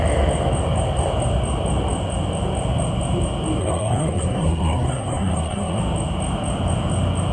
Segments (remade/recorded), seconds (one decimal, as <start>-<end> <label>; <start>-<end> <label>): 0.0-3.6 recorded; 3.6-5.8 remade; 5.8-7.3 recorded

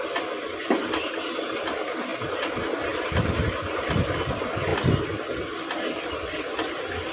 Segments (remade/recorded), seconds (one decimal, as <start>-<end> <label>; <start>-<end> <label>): 0.0-7.1 recorded

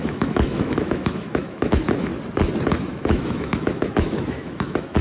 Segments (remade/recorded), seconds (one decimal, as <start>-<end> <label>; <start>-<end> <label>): 0.0-2.1 remade; 2.1-2.9 recorded; 2.9-5.0 remade